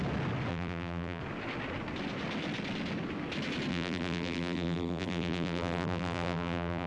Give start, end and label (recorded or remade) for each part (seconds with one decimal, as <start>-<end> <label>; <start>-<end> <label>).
0.0-0.5 recorded; 0.5-1.2 remade; 1.2-3.7 recorded; 3.7-6.9 remade